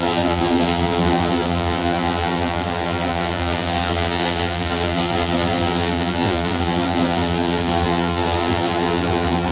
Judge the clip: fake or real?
fake